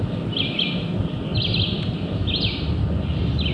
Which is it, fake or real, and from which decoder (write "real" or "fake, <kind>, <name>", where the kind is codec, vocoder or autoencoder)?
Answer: real